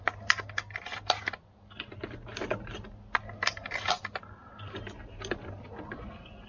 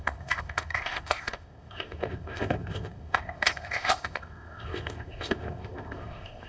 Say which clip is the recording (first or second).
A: first